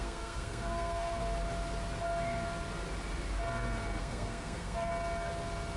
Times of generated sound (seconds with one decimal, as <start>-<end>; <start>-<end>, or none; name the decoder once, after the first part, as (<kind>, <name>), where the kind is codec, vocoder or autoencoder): 0.0-1.2 (codec, SNAC); 4.0-4.9